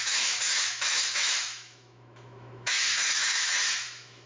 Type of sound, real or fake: fake